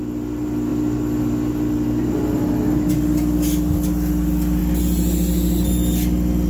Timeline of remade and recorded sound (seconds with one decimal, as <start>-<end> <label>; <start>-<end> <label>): 0.0-6.5 recorded